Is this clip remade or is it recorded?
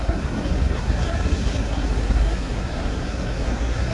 remade